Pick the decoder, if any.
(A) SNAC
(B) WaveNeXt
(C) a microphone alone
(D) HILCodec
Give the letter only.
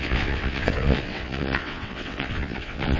B